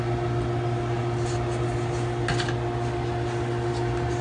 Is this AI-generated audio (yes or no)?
no